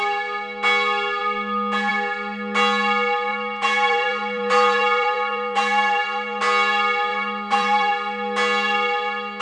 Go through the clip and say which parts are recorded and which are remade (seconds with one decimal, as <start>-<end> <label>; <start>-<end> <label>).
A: 0.0-3.3 recorded; 3.3-6.4 remade; 6.4-7.1 recorded; 7.1-7.9 remade; 7.9-9.4 recorded